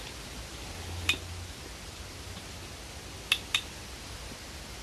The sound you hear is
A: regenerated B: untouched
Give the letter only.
B